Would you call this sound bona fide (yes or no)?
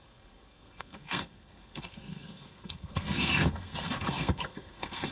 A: no